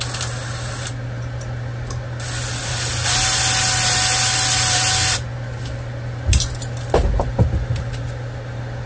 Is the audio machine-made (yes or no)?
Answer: no